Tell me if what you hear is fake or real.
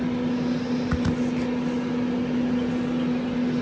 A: real